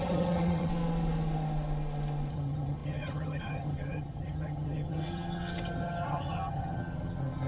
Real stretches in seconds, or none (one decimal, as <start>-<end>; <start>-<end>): 0.7-2.3